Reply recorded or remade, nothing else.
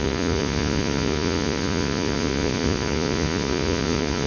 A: remade